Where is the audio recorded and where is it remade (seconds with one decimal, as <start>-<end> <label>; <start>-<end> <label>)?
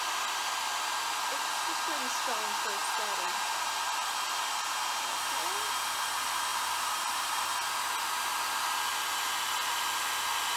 0.0-2.8 recorded; 2.8-3.9 remade; 3.9-6.5 recorded; 6.5-7.3 remade; 7.3-10.6 recorded